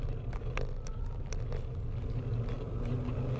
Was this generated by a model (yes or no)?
no